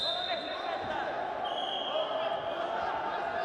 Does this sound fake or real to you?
real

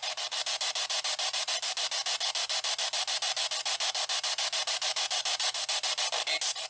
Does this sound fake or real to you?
real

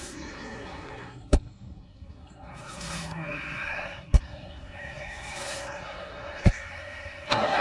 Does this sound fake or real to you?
fake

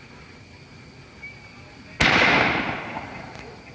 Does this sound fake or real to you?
real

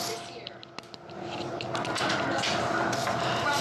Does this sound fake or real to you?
real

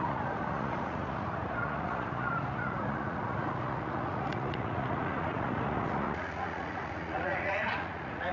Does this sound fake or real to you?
fake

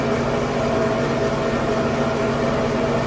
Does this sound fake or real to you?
real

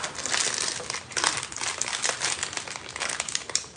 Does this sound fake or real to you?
real